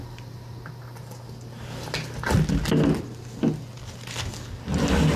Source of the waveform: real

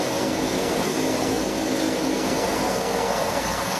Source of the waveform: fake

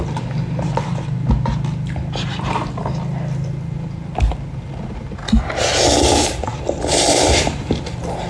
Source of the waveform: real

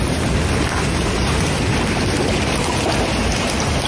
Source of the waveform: real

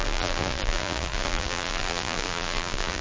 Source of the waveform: fake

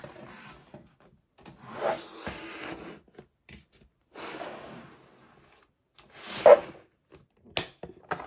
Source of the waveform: real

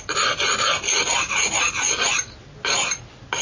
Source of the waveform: real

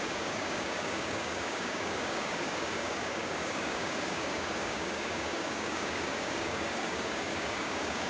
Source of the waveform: fake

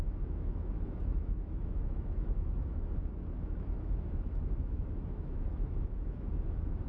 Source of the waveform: fake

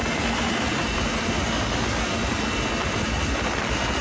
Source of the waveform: real